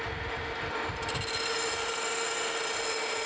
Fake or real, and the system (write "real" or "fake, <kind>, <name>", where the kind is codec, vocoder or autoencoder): real